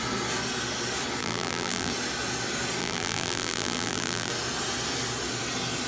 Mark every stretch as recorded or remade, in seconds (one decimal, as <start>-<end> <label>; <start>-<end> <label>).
0.0-1.2 recorded; 1.2-1.9 remade; 1.9-2.8 recorded; 2.8-4.3 remade; 4.3-5.9 recorded